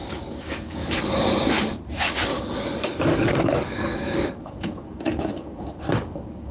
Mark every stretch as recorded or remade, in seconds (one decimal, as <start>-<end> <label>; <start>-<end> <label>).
0.0-1.0 remade; 1.0-2.3 recorded; 2.3-6.5 remade